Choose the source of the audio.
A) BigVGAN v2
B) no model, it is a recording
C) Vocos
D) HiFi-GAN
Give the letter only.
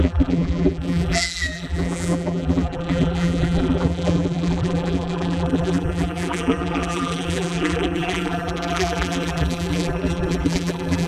A